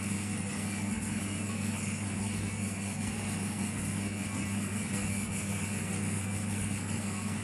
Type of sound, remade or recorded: remade